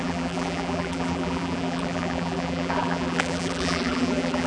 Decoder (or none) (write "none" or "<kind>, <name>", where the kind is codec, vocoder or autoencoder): vocoder, BigVGAN v2